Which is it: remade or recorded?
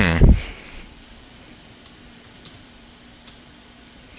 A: remade